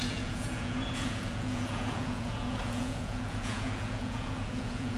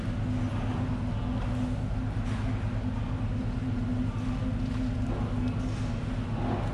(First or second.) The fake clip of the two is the first